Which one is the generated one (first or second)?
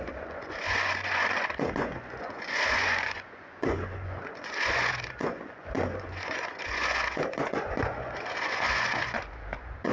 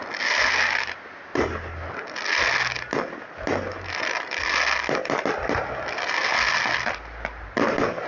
first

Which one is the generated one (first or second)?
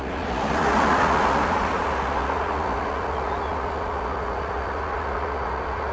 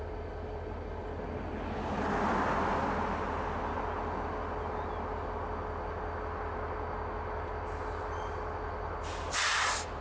first